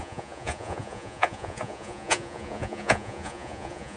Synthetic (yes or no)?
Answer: yes